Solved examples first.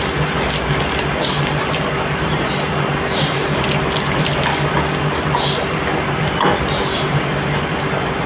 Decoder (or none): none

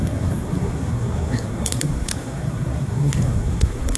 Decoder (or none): codec, SNAC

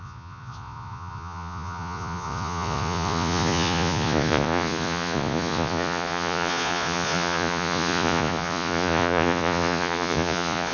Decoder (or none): vocoder, Vocos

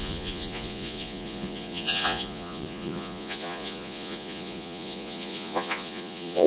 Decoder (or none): vocoder, Vocos